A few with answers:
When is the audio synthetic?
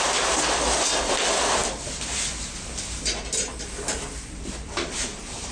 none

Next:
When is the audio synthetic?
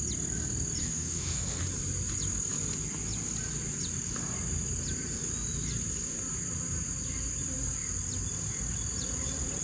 0.8-1.6 (autoencoder, DAC-VAE)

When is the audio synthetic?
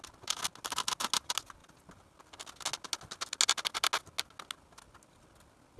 none